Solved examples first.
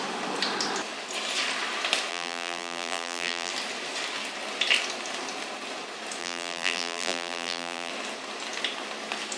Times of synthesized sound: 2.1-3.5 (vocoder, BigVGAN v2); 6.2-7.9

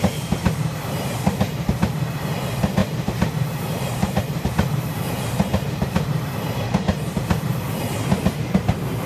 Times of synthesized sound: 2.8-6.7 (vocoder, BigVGAN v2)

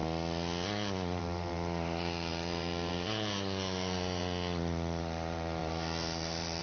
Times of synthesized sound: 1.2-4.2 (vocoder, BigVGAN v2); 5.0-6.6

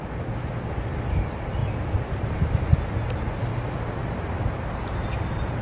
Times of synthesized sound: 1.6-2.2 (vocoder, BigVGAN v2)

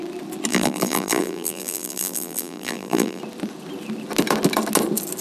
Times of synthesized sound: 0.5-3.2 (vocoder, BigVGAN v2)

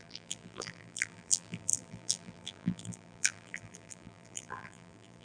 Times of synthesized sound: 0.0-5.2 (vocoder, BigVGAN v2)

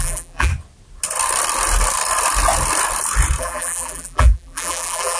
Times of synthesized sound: 0.0-0.5 (vocoder, BigVGAN v2); 3.4-5.2

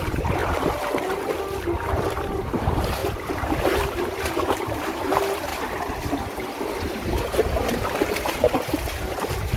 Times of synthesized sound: 0.0-5.5 (vocoder, BigVGAN v2); 7.1-9.6